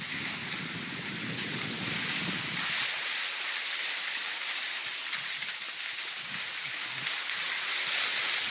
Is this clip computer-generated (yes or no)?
no